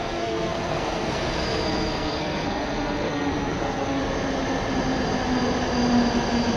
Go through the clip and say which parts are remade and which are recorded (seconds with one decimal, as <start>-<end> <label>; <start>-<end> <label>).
0.0-4.0 remade; 4.0-6.6 recorded